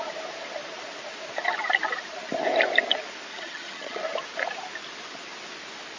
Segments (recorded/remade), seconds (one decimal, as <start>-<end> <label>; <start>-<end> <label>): 0.0-3.3 recorded; 3.3-4.0 remade; 4.0-6.0 recorded